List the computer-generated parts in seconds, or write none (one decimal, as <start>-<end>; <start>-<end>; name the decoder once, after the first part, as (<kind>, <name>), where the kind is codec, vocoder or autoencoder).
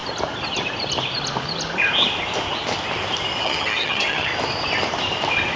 3.4-4.3 (vocoder, HiFi-GAN)